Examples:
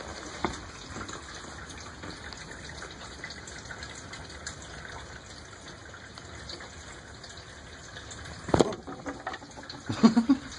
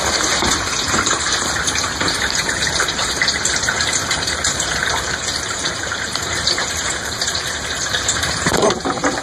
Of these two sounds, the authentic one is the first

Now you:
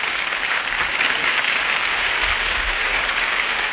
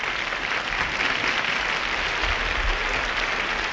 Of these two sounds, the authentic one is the second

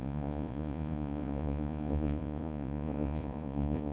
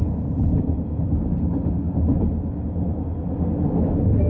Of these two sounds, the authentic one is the second